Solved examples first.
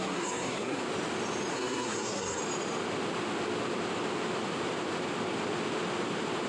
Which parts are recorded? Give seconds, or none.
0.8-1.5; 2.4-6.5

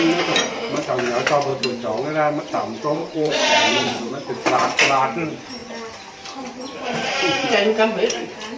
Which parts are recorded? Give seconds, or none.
0.0-3.0; 4.1-8.6

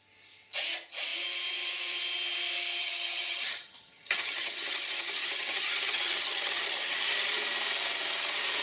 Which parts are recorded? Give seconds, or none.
0.0-2.8; 7.3-8.6